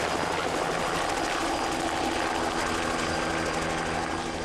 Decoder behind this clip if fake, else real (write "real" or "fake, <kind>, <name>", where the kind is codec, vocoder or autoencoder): real